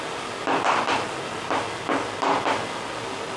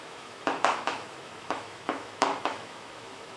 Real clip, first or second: first